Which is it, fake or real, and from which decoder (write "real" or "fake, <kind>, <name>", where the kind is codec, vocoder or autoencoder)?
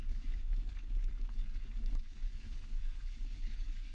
fake, codec, DAC